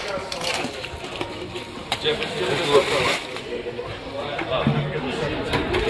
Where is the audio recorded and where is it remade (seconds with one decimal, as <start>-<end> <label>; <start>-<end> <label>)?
0.0-5.9 recorded